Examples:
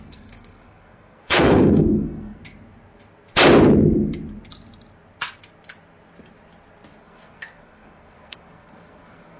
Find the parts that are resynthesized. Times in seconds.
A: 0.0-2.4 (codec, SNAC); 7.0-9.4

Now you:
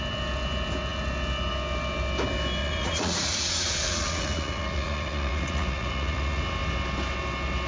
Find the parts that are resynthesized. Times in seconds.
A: 2.6-6.4 (vocoder, Vocos)

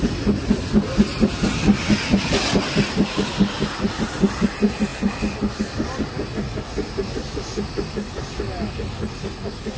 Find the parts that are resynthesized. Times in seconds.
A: none

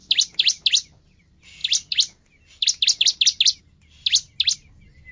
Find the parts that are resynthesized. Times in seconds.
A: none